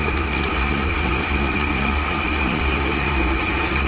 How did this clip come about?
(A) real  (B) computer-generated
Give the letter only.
B